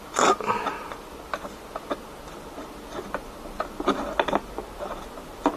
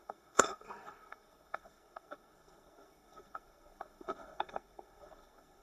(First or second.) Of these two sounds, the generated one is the second